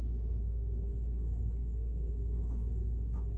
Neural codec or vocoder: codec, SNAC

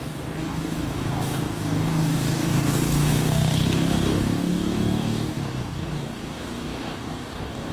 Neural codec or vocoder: codec, DAC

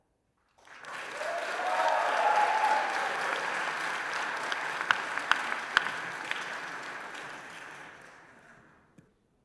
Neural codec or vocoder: none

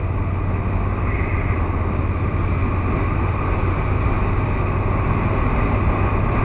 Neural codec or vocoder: none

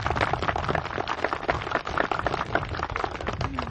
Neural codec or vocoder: none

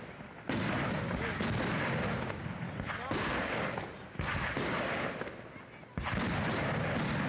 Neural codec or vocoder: none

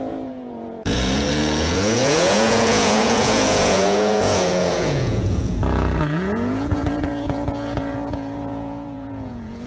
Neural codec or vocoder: vocoder, Vocos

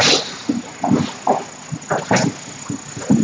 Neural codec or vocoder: none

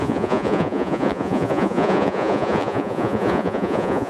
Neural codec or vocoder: vocoder, Vocos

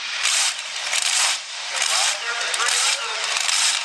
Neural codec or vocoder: vocoder, BigVGAN v2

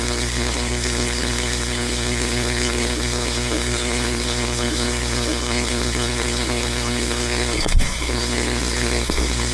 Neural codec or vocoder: codec, SNAC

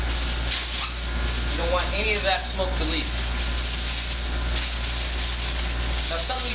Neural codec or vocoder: none